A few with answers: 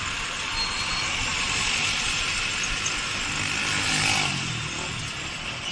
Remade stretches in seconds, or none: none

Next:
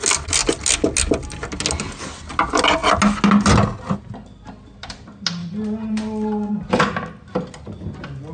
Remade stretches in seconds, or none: none

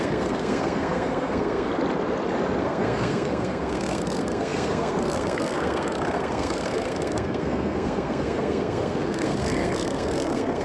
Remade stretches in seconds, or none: 0.0-1.7 (codec, SNAC); 2.6-10.6